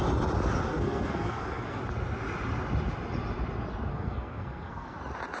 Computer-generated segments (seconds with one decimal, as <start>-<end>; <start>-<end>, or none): 0.7-1.8; 3.9-5.0